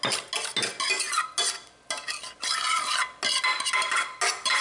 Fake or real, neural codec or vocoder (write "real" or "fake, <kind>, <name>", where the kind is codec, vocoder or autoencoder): real